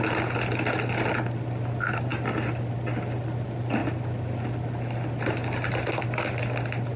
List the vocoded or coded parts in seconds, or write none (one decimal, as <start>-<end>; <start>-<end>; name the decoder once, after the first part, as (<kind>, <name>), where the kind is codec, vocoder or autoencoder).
none